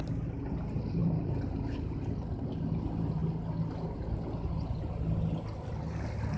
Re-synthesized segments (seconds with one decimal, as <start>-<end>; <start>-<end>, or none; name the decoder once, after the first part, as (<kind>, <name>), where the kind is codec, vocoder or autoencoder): 1.0-1.6 (vocoder, BigVGAN v2)